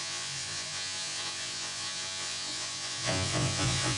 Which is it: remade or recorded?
remade